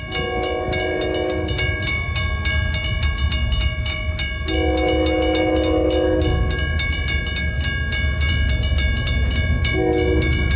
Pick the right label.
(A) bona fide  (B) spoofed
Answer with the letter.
A